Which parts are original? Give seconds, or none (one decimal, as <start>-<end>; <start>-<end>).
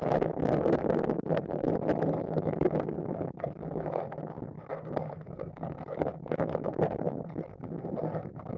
1.7-2.2